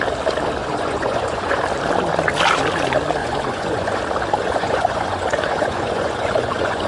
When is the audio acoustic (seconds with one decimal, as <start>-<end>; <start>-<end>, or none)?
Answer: 0.0-0.6; 1.6-3.2; 4.0-4.4

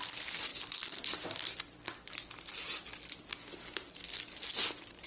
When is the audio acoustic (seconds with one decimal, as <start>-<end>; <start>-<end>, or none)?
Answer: 0.0-5.1

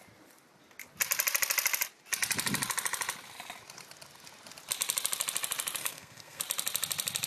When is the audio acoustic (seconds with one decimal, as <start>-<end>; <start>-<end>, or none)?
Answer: 0.0-5.8; 6.4-7.3

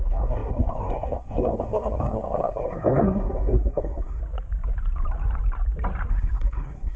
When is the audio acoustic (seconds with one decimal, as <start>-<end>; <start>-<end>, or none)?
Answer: 4.2-6.1

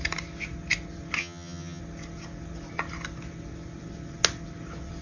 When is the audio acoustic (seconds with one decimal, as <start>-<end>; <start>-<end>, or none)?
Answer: 0.0-1.2; 1.8-5.0

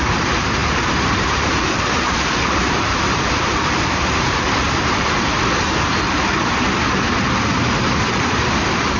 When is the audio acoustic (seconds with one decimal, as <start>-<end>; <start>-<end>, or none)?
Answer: none

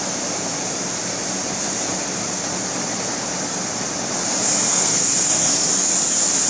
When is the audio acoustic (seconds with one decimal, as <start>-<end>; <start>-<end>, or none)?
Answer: 0.0-4.7; 5.5-6.5